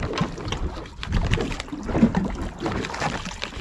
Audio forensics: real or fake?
real